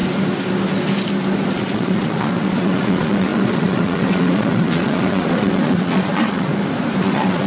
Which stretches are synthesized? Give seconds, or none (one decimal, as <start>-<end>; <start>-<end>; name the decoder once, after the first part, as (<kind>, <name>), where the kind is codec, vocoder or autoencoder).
1.5-6.5 (vocoder, Vocos); 7.0-7.5